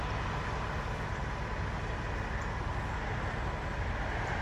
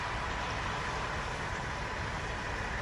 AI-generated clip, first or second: second